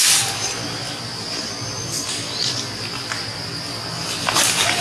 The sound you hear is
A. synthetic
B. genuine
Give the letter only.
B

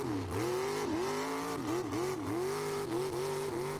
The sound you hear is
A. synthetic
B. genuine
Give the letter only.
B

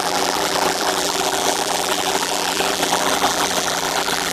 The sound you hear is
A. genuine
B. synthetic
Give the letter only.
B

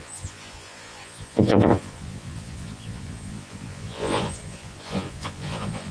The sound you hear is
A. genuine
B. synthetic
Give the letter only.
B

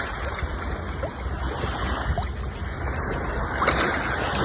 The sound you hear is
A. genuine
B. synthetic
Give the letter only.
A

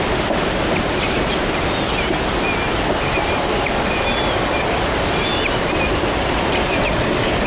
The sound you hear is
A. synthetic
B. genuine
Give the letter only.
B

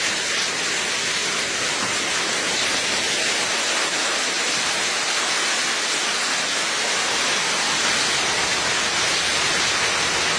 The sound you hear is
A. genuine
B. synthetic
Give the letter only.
A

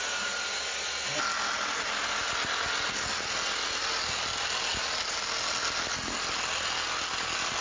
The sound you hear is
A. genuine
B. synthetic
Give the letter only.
A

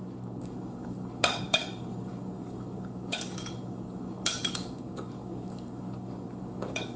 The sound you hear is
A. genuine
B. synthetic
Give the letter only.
B